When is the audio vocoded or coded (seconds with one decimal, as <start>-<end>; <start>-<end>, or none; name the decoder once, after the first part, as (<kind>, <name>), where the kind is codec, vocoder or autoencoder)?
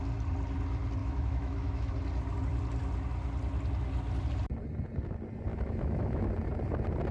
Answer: 1.0-1.9 (autoencoder, DAC-VAE); 5.5-6.3